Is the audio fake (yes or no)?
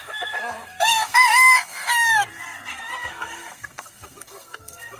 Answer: yes